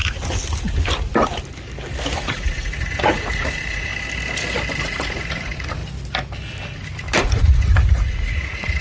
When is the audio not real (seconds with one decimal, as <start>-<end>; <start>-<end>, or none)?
2.2-3.9; 4.8-5.8; 7.2-8.8